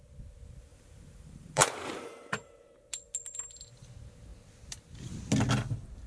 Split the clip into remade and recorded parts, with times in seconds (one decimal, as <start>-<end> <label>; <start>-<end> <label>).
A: 0.0-0.7 recorded; 0.7-2.7 remade; 2.7-6.1 recorded